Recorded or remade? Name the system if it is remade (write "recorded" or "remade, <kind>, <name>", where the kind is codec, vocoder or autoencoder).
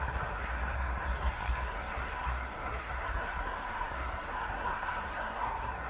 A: remade, codec, SNAC